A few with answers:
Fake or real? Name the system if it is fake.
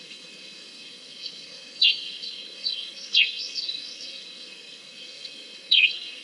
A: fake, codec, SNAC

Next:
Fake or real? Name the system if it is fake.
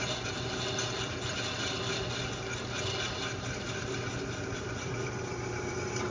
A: real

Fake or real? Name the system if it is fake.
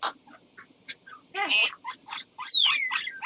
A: real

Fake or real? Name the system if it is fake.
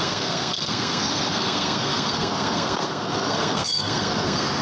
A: fake, codec, SNAC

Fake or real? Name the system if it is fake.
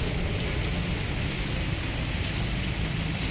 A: real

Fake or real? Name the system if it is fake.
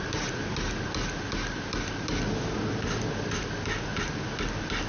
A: real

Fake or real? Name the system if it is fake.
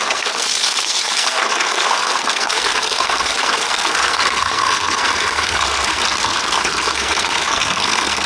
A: fake, codec, SNAC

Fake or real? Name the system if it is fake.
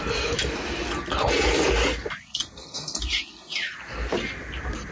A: real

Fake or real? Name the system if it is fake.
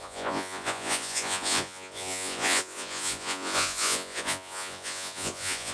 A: fake, vocoder, Vocos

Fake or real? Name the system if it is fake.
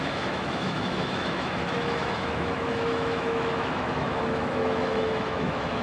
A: fake, autoencoder, DAC-VAE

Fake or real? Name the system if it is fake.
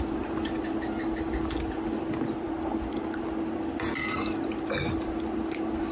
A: real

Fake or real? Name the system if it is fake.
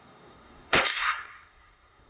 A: fake, codec, SNAC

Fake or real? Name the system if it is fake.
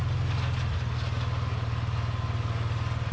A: real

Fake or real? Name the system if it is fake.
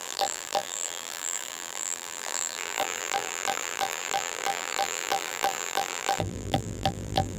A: fake, vocoder, BigVGAN v2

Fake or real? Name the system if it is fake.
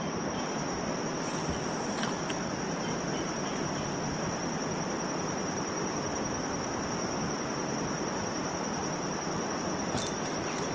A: real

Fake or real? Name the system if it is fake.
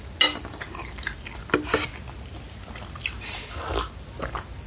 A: real